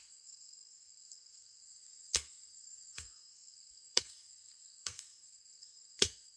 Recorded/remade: remade